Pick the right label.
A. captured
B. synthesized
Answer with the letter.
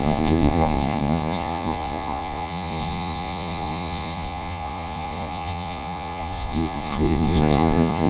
B